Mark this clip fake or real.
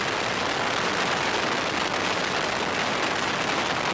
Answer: real